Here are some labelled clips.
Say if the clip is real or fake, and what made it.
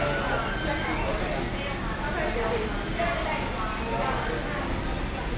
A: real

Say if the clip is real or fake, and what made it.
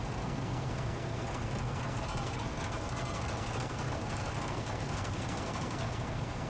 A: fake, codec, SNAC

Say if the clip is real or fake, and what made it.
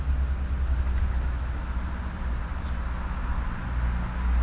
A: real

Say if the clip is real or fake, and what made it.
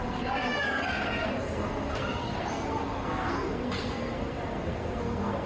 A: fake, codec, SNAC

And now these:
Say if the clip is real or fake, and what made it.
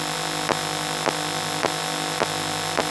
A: real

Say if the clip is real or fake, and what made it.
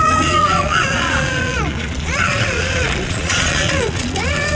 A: fake, vocoder, Vocos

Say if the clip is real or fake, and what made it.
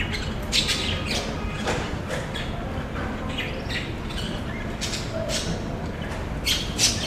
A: real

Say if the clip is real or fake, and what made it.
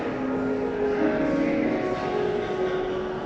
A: real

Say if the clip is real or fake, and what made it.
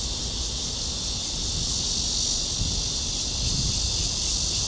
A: real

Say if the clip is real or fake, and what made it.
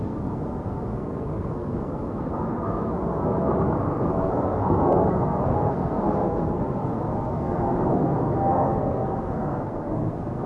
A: fake, codec, SNAC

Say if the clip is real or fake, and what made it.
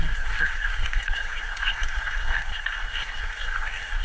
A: fake, codec, SNAC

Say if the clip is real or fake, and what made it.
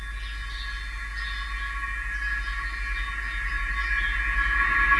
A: real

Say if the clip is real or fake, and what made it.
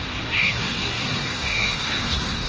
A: fake, codec, SNAC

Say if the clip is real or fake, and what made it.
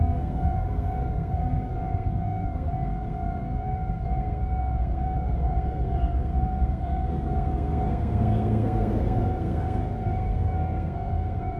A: fake, codec, SNAC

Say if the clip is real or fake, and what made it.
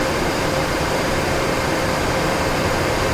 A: fake, vocoder, BigVGAN v2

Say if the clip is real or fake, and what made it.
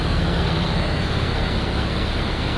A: fake, codec, SNAC